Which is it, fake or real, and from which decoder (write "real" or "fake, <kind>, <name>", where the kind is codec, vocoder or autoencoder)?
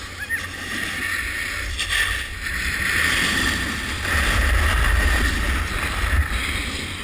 real